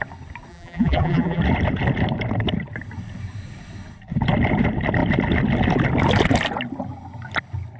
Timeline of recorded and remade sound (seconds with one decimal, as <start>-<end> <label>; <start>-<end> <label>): 0.0-0.5 recorded; 0.5-1.4 remade; 1.4-7.8 recorded